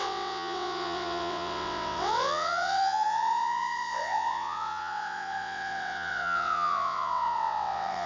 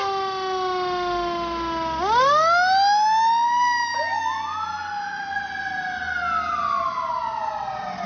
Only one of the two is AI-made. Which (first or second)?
first